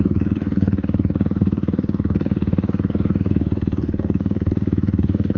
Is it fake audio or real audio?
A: fake